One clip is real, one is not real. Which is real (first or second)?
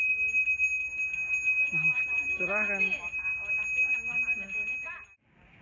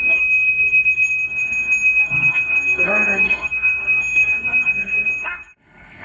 first